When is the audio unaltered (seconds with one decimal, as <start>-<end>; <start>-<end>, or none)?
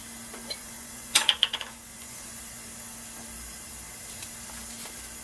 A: 0.0-0.6; 2.4-5.2